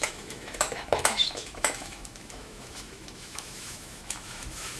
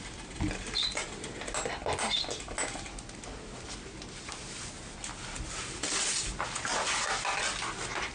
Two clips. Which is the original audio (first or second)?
second